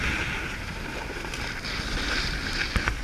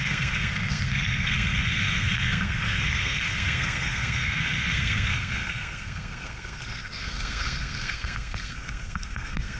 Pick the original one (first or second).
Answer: first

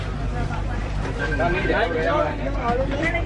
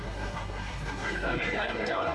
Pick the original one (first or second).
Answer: first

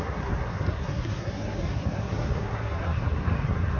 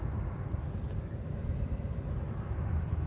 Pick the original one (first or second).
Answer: second